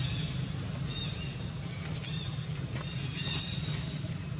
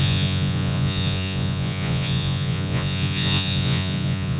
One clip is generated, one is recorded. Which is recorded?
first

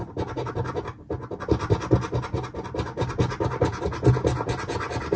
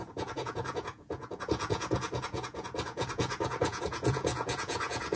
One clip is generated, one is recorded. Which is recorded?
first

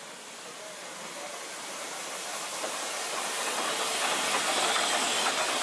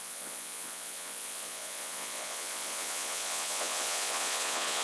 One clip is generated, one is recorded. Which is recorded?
first